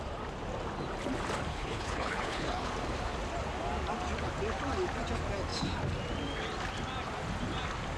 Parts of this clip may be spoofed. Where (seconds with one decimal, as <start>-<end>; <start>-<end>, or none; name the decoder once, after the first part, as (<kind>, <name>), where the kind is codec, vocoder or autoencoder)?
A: 1.5-2.7 (codec, HILCodec)